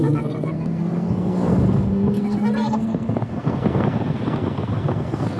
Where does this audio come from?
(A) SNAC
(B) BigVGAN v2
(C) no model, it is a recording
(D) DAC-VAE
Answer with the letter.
A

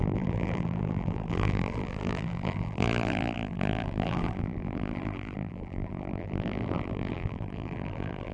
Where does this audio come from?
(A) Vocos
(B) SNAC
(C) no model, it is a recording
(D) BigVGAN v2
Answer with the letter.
D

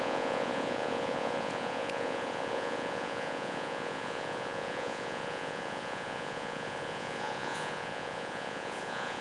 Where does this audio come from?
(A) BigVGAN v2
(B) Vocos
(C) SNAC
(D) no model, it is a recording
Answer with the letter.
B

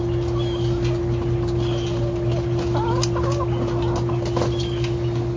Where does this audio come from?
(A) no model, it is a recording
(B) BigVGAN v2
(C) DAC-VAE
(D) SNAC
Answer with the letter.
A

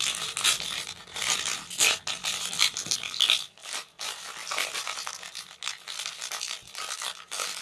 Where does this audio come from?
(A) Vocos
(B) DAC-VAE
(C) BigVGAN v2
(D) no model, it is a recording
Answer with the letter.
D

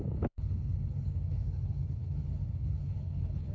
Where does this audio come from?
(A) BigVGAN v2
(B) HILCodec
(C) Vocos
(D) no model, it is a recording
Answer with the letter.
B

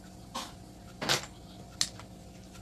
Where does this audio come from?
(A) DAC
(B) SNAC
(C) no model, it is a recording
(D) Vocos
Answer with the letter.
C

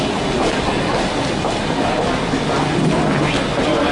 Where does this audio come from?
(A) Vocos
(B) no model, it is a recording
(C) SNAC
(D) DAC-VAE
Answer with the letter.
B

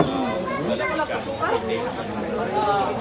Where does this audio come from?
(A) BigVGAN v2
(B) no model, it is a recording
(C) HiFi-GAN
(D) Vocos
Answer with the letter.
B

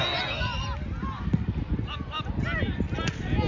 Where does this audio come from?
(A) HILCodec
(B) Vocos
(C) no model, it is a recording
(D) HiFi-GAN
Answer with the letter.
C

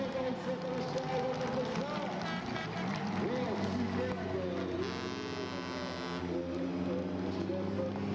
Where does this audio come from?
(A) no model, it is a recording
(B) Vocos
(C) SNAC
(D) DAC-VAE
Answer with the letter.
A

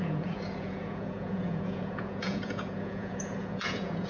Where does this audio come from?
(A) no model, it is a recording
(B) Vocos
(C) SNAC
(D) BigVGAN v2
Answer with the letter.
B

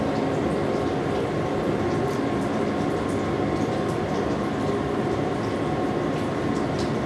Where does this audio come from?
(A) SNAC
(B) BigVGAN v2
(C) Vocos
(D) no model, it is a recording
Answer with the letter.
D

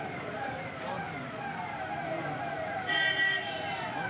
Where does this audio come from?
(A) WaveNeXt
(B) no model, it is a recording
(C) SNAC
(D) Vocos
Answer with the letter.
B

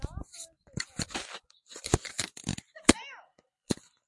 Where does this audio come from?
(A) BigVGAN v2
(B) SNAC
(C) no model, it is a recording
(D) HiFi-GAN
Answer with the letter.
A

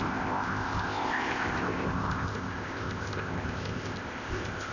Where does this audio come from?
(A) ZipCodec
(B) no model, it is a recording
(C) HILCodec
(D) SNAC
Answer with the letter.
A